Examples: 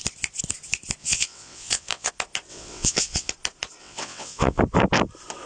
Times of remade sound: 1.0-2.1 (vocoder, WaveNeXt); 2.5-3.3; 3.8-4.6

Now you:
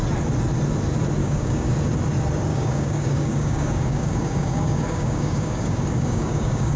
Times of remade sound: 1.2-1.7 (codec, DAC); 2.5-6.8

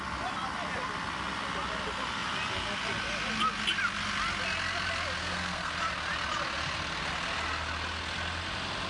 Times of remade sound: 5.2-5.7 (codec, SNAC)

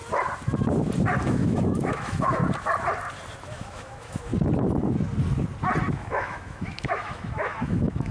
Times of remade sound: 1.2-2.4 (autoencoder, DAC-VAE); 3.4-4.3; 5.9-8.1

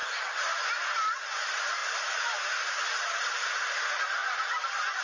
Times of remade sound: none